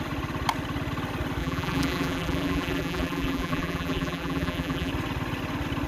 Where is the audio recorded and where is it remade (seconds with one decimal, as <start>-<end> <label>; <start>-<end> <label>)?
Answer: 0.0-1.4 recorded; 1.4-4.9 remade; 4.9-5.9 recorded